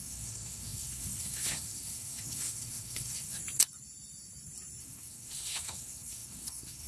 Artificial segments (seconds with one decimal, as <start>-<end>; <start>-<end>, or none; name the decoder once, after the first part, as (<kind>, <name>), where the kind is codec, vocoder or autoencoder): 0.0-3.4 (codec, SNAC); 4.8-6.9